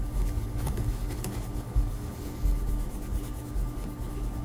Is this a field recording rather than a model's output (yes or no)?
no